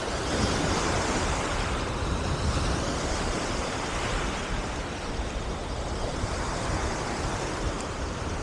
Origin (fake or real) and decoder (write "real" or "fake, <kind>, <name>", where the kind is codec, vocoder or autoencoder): fake, vocoder, BigVGAN v2